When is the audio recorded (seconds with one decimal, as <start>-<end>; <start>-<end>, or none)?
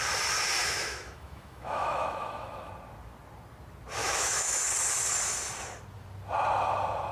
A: 0.0-0.6; 2.7-4.0; 4.6-7.1